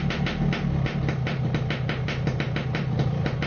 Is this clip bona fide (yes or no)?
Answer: yes